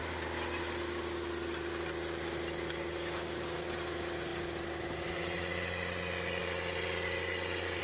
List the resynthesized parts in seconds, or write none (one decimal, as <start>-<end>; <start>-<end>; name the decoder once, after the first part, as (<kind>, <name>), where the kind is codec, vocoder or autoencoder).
none